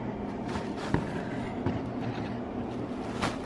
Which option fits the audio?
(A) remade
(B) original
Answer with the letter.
B